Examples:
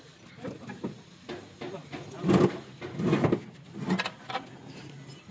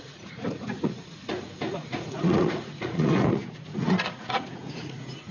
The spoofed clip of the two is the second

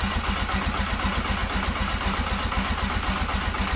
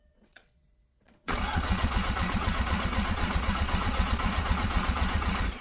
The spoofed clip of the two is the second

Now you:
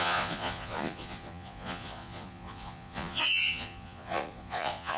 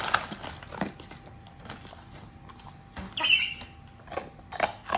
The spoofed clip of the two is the first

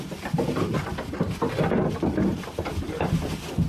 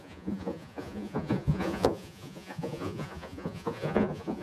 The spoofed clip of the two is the second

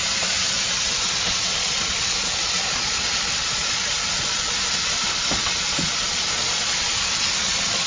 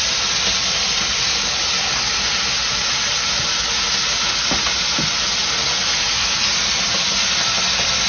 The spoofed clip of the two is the first